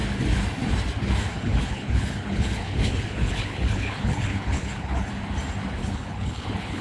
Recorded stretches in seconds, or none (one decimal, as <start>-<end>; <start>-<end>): 0.0-1.3; 5.1-5.8